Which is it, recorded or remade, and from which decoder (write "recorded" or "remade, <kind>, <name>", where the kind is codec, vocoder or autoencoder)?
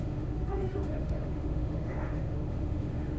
remade, autoencoder, DAC-VAE